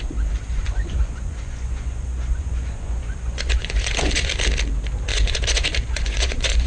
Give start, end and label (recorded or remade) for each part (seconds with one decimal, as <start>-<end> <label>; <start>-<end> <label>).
0.0-0.5 recorded; 0.5-4.3 remade; 4.3-5.1 recorded; 5.1-6.7 remade